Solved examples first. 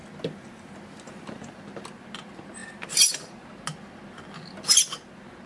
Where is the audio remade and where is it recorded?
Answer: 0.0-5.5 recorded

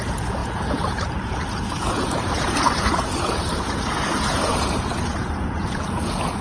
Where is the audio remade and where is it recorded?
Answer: 0.0-6.4 remade